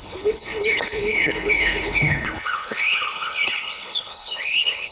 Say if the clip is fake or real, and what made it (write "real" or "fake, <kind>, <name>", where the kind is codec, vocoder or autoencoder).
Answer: fake, codec, HILCodec